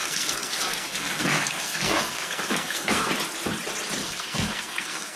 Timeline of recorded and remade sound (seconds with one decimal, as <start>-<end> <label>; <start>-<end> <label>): 0.0-3.1 remade; 3.1-4.0 recorded; 4.0-5.2 remade